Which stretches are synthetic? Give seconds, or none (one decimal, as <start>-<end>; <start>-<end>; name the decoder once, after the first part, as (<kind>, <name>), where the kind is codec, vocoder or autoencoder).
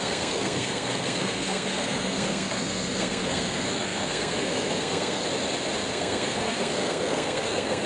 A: 0.0-5.2 (codec, SNAC); 5.9-7.9